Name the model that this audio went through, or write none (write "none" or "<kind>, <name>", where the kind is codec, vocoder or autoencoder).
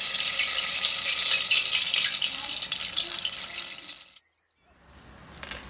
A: none